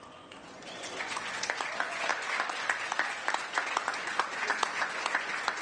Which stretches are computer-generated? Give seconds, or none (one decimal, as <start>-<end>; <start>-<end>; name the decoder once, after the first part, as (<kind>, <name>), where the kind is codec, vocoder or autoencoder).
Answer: 0.0-5.6 (vocoder, Vocos)